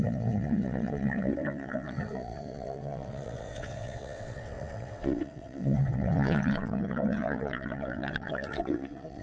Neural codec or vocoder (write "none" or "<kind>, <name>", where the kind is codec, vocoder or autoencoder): vocoder, WaveNeXt